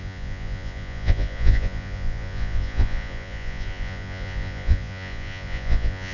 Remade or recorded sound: remade